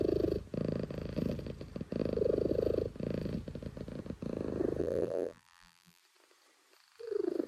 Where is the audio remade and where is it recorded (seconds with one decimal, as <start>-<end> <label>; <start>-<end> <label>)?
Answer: 0.0-4.8 recorded; 4.8-6.0 remade; 6.0-7.5 recorded